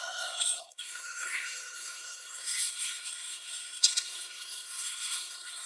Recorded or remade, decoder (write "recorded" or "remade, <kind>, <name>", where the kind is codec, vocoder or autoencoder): remade, codec, SNAC